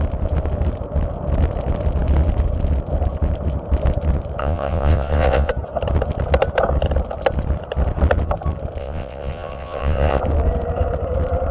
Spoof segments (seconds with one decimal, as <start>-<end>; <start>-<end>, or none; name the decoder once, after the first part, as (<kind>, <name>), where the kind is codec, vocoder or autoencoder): 4.4-5.5 (vocoder, WaveNeXt); 8.8-10.2